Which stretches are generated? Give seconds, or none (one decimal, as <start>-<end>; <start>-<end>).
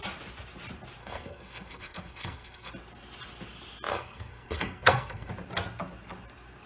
1.0-2.7; 3.9-5.3